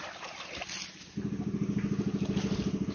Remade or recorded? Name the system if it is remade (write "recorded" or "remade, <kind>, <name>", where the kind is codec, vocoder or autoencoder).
recorded